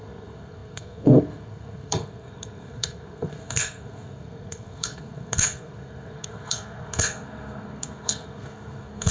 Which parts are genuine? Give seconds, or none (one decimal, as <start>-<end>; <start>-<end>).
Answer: none